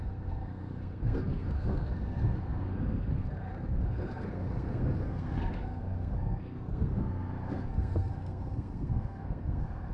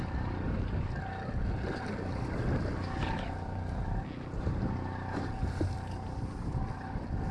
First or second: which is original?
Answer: second